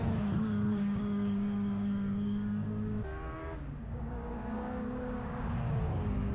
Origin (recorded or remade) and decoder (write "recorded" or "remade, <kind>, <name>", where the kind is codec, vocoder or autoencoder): remade, codec, DAC